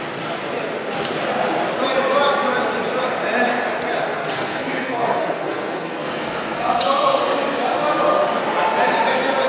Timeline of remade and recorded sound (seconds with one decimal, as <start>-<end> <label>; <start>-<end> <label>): 0.0-4.2 recorded; 4.2-7.2 remade; 7.2-9.5 recorded